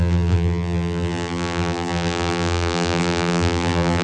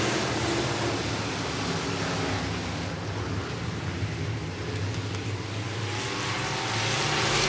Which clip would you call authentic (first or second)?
second